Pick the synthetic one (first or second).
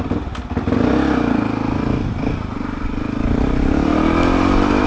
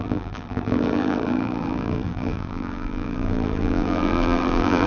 second